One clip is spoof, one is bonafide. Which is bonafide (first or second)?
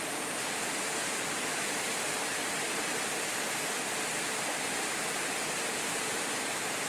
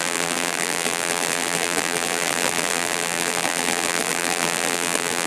first